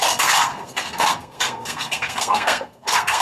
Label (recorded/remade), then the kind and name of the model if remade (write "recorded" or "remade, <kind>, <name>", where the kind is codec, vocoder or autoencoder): remade, codec, SNAC